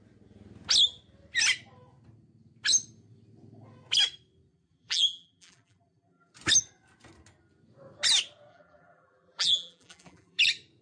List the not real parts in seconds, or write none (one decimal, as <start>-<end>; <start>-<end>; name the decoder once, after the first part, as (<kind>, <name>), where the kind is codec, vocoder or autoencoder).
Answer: 4.5-6.3 (vocoder, BigVGAN v2); 8.5-10.4